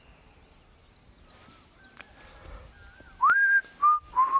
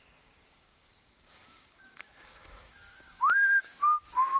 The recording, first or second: first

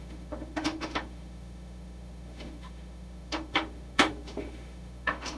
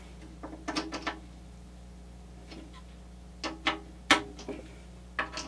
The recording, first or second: second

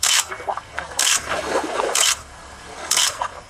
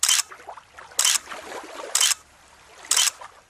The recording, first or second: second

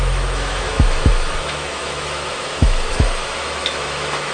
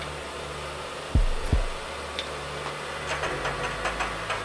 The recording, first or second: second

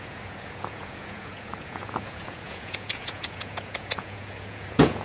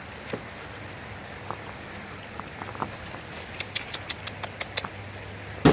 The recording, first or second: second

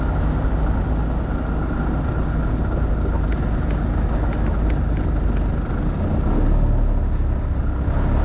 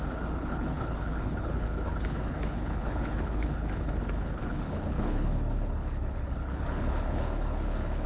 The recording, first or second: first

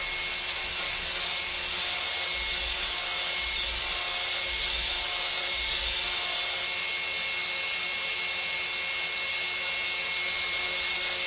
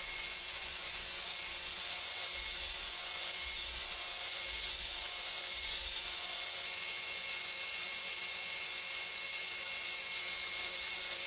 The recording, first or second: first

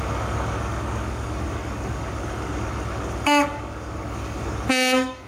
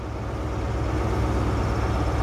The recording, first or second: second